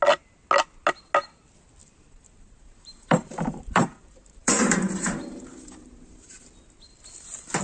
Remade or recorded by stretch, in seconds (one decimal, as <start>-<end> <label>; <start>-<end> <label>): 0.0-1.8 recorded; 1.8-6.4 remade; 6.4-7.6 recorded

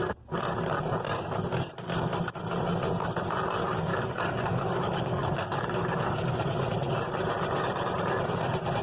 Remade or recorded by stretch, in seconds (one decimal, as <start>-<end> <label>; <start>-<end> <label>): 0.0-3.9 recorded; 3.9-6.3 remade; 6.3-8.8 recorded